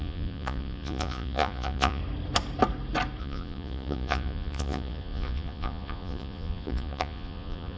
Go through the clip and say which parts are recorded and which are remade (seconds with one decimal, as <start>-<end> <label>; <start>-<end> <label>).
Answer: 0.0-2.0 remade; 2.0-3.2 recorded; 3.2-7.8 remade